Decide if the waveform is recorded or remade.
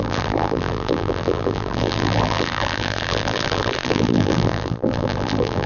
remade